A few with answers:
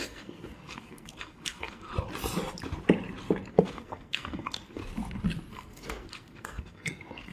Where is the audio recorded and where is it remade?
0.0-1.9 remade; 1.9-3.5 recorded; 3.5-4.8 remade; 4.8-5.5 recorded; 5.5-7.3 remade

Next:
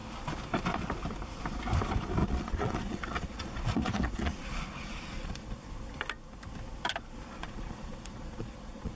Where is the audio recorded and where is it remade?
0.0-2.2 recorded; 2.2-5.7 remade; 5.7-7.3 recorded; 7.3-9.0 remade

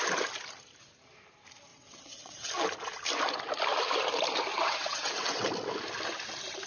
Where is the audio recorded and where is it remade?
0.0-1.7 recorded; 1.7-2.5 remade; 2.5-4.5 recorded; 4.5-5.5 remade; 5.5-6.7 recorded